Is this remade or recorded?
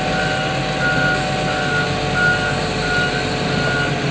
recorded